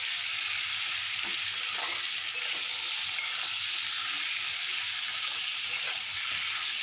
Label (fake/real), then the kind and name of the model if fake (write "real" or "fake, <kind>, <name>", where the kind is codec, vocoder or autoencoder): real